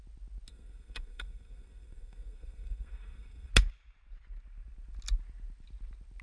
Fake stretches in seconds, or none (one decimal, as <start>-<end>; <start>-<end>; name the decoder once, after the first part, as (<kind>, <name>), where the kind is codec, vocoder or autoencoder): 0.5-3.5 (codec, SNAC)